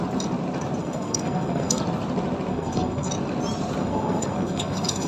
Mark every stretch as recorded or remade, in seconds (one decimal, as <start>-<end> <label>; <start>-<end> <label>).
0.0-0.8 recorded; 0.8-1.8 remade; 1.8-2.5 recorded; 2.5-3.1 remade; 3.1-3.8 recorded; 3.8-5.1 remade